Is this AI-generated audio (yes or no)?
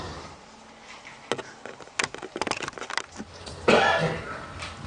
no